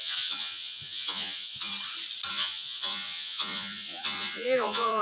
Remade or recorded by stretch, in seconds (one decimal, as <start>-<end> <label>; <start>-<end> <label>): 0.0-1.7 remade; 1.7-2.3 recorded; 2.3-5.0 remade